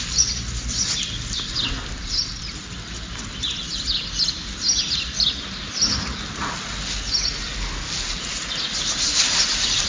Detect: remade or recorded recorded